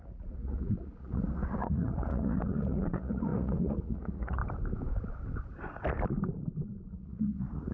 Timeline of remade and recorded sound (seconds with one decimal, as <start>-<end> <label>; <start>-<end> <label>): 0.0-4.4 remade; 4.4-6.9 recorded; 6.9-7.7 remade